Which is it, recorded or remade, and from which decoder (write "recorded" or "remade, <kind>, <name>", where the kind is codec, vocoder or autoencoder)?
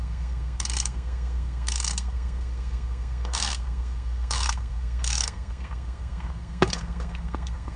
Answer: remade, codec, SNAC